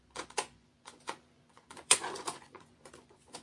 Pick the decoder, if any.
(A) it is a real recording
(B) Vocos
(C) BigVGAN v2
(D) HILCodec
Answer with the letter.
B